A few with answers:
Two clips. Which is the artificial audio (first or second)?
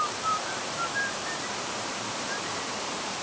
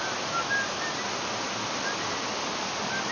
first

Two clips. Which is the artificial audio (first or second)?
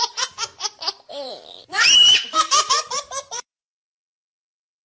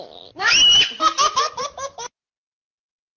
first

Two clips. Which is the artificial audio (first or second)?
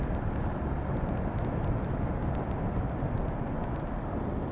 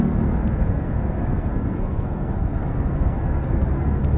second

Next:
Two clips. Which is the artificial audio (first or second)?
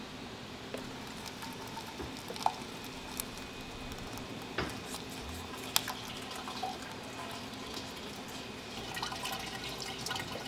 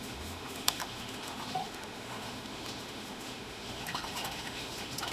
second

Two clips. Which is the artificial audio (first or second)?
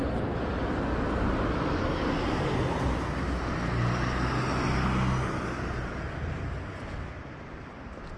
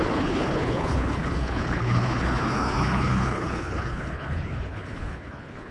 second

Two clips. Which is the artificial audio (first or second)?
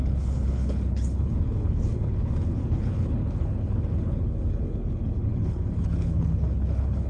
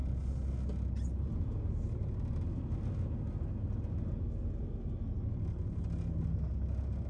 first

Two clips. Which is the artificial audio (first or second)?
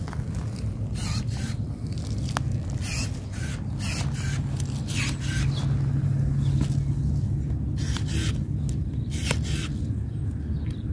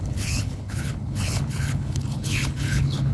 second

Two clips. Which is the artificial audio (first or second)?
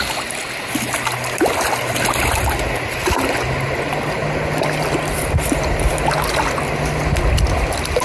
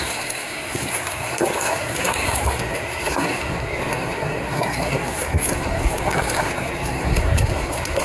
second